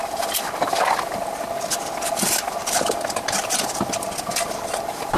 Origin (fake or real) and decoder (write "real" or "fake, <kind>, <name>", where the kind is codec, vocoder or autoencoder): fake, vocoder, BigVGAN v2